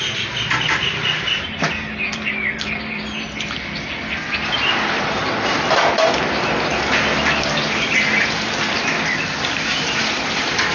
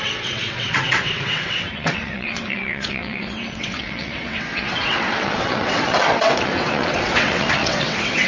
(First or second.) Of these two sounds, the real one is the first